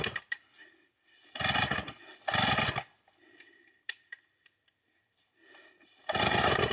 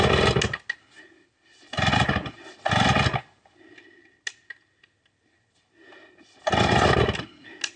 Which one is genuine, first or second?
second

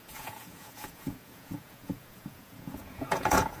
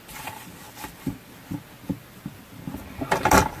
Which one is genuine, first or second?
second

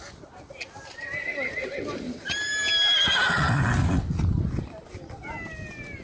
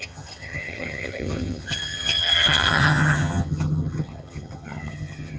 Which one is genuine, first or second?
first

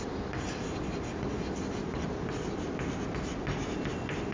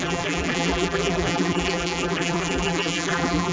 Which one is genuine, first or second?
first